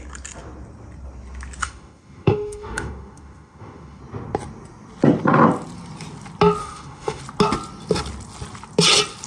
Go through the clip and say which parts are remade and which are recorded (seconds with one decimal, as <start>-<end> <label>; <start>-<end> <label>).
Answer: 0.0-1.6 recorded; 1.6-4.0 remade; 4.0-6.6 recorded; 6.6-7.2 remade; 7.2-9.3 recorded